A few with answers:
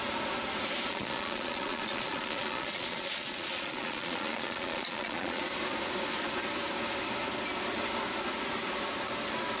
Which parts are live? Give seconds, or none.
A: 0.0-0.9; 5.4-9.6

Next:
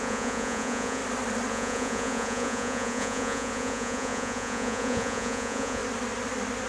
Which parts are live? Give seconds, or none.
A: 1.0-1.5; 5.8-6.7

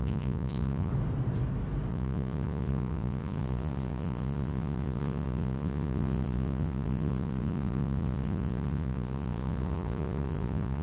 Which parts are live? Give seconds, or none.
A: 0.9-1.9

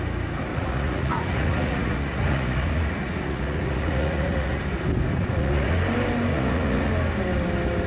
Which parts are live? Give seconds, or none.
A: 0.0-0.5; 4.6-5.1; 5.8-6.3; 6.9-7.9